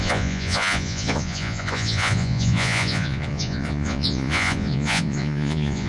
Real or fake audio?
fake